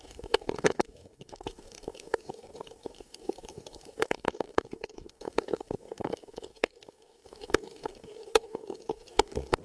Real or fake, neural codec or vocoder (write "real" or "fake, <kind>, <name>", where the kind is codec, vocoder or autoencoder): fake, codec, DAC